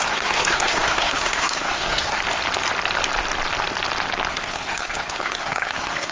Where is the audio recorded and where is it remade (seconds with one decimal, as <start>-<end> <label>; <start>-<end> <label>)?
0.0-2.2 remade; 2.2-4.3 recorded; 4.3-6.1 remade